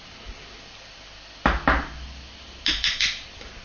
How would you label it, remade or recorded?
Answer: recorded